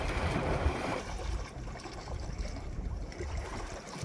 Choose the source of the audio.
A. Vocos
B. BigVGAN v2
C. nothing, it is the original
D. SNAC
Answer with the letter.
B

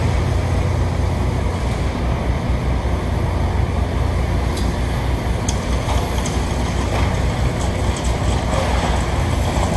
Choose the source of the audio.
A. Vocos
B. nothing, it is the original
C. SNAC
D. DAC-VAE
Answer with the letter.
B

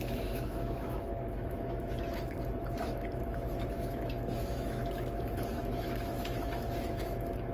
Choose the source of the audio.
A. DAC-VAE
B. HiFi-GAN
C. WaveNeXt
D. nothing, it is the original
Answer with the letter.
A